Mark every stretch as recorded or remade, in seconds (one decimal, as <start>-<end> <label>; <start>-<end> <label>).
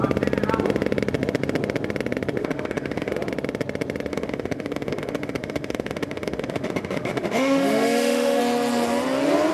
0.0-2.4 recorded; 2.4-3.1 remade; 3.1-4.1 recorded; 4.1-8.4 remade; 8.4-9.5 recorded